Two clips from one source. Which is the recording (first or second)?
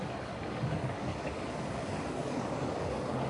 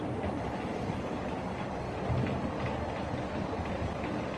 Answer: second